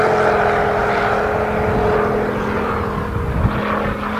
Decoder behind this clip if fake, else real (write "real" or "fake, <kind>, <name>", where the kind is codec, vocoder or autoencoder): real